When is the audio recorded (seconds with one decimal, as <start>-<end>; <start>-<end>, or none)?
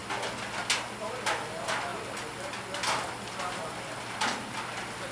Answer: 0.0-5.1